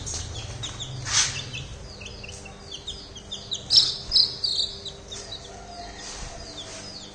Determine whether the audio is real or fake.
real